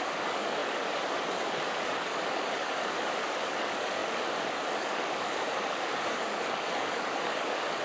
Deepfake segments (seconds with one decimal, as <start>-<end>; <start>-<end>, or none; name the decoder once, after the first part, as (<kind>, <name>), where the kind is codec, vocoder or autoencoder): 0.0-7.8 (codec, DAC)